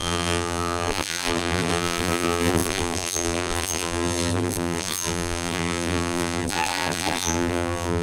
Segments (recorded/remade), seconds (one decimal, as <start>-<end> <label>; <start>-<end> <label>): 0.0-8.0 remade

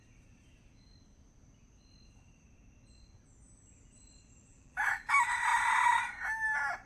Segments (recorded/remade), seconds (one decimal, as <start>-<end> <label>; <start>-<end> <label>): 0.0-4.5 recorded; 4.5-5.1 remade; 5.1-6.9 recorded